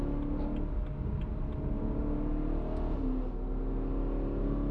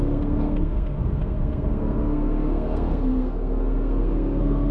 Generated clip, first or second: second